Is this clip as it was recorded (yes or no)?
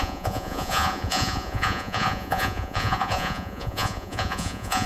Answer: no